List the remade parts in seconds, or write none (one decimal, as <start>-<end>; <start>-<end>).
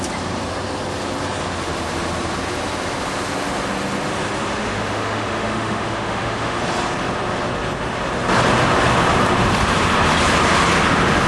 4.6-6.6